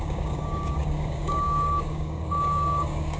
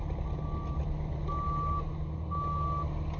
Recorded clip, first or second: second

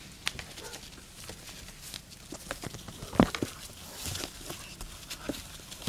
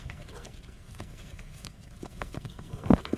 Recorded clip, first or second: first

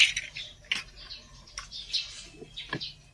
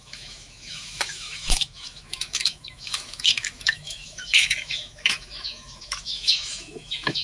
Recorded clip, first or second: first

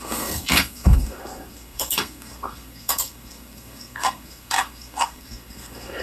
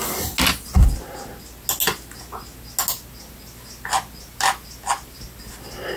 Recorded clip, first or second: second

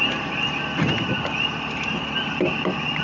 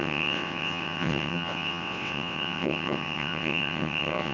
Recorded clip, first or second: first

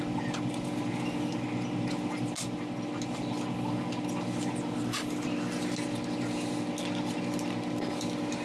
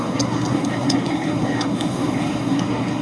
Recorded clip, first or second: first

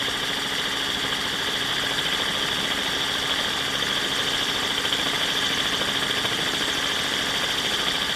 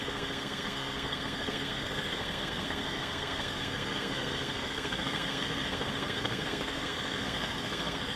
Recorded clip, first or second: first